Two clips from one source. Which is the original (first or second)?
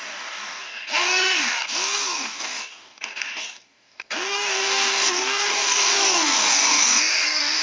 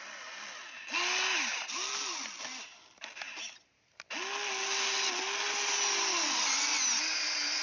second